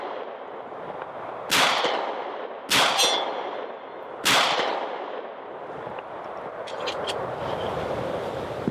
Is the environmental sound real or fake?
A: real